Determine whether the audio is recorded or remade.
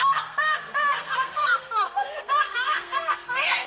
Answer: remade